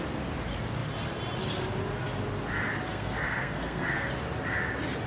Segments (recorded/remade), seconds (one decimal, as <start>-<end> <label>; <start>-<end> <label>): 0.0-2.9 recorded; 2.9-4.1 remade; 4.1-5.1 recorded